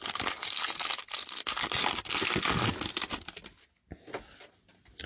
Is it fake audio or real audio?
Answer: real